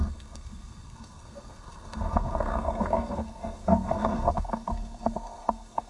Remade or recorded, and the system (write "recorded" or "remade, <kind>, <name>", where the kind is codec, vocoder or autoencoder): remade, codec, SNAC